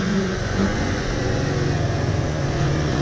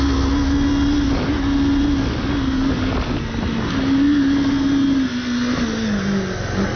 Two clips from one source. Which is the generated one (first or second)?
first